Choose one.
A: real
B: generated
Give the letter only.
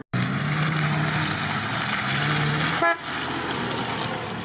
A